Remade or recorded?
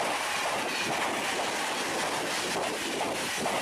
recorded